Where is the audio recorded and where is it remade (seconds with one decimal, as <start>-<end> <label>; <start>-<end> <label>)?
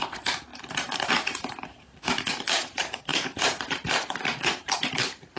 0.0-5.4 remade